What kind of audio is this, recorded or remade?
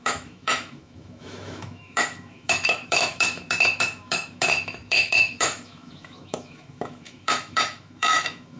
remade